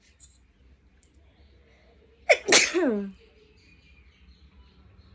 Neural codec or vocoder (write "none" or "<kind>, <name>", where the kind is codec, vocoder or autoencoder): none